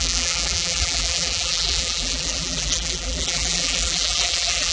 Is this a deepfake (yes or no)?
yes